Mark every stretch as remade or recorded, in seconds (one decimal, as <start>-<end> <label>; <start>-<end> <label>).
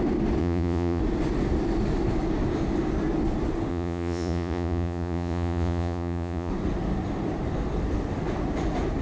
0.0-0.4 recorded; 0.4-1.0 remade; 1.0-3.7 recorded; 3.7-6.5 remade; 6.5-9.0 recorded